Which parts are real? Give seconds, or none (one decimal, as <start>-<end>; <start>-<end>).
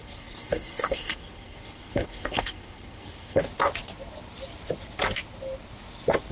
3.4-6.3